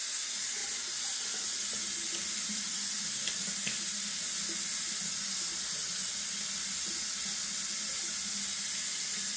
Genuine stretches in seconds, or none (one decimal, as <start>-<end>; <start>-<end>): 0.0-9.4